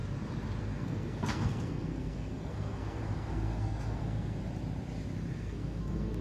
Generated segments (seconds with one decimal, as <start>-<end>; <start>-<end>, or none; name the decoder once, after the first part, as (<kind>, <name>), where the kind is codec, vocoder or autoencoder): 0.6-4.4 (codec, SNAC); 5.3-6.2